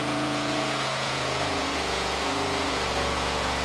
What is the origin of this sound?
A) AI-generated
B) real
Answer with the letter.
A